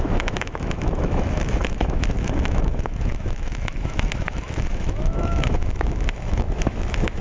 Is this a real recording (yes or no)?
no